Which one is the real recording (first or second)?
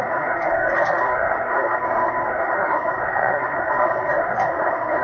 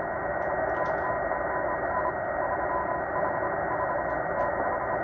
second